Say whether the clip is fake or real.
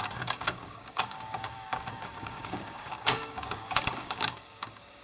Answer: fake